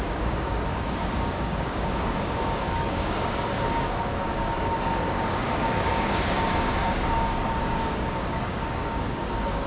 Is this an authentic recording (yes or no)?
no